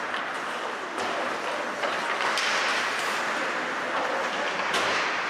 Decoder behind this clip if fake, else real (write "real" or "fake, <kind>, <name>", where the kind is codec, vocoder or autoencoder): real